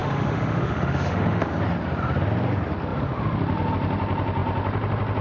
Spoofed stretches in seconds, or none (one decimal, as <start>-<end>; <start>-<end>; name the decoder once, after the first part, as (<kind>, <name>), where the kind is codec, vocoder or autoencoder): 0.0-1.5 (autoencoder, DAC-VAE)